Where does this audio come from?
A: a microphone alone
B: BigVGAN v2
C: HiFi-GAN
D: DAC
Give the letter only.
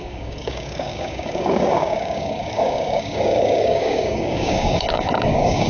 D